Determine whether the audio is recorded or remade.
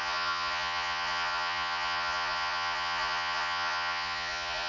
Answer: remade